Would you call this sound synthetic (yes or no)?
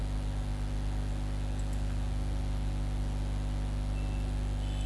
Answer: no